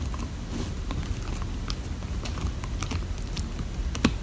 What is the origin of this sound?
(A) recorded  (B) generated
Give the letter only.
A